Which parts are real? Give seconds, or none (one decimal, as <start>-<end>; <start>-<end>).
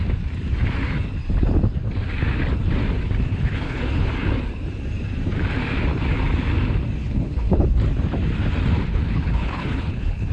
0.0-3.3; 4.1-7.0; 7.6-8.9